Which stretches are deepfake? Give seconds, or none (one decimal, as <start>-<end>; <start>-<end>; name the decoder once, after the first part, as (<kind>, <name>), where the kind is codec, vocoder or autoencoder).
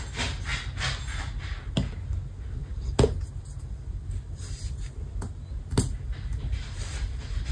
none